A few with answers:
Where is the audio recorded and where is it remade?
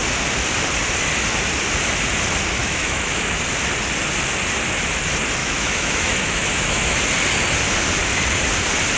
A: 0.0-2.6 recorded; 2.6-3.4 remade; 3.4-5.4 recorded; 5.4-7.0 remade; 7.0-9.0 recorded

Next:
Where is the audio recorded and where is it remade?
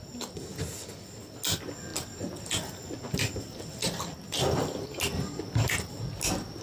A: 0.0-6.6 recorded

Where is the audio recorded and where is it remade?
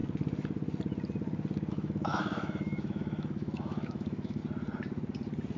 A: 0.0-1.7 recorded; 1.7-4.4 remade; 4.4-5.6 recorded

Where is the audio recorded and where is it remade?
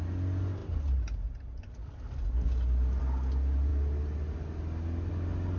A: 0.0-5.6 recorded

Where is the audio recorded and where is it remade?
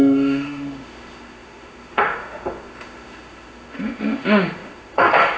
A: 0.0-5.4 remade